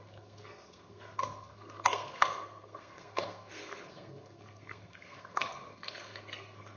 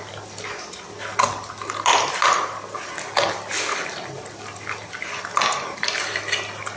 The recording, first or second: second